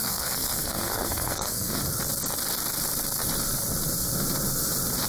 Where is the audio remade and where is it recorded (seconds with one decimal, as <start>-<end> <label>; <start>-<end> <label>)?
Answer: 0.0-1.8 remade; 1.8-5.1 recorded